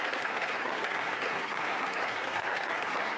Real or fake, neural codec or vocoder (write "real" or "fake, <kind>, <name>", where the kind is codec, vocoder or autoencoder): fake, codec, SNAC